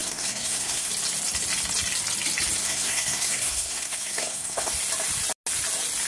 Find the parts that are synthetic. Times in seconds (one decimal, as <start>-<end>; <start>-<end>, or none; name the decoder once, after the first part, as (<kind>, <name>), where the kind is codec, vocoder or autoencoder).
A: 0.0-0.9 (codec, SNAC); 2.6-4.7